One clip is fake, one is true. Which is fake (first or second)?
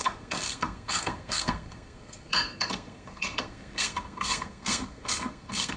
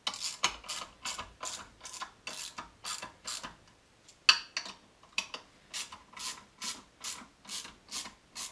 first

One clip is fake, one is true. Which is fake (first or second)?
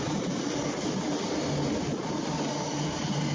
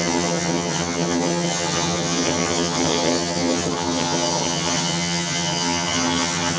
second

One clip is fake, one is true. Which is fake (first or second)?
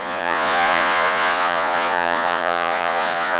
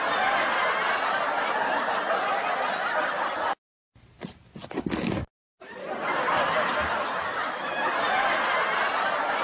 first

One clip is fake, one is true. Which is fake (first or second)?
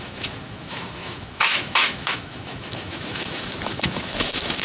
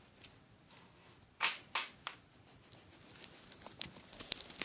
first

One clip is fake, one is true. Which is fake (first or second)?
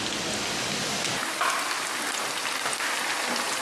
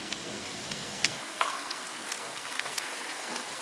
second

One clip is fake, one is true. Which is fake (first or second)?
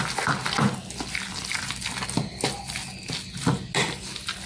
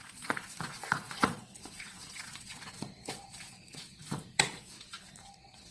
second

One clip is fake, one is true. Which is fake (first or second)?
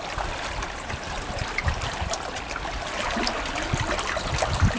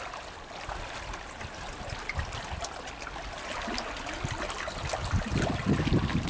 first